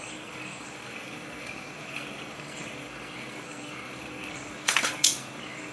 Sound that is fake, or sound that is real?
fake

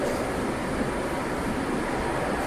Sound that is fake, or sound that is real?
real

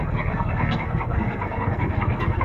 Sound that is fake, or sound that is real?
fake